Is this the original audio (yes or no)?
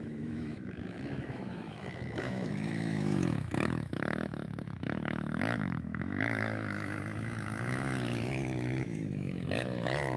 no